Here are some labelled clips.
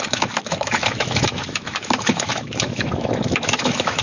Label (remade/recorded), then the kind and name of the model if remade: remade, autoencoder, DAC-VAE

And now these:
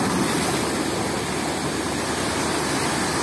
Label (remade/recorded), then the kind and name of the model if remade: recorded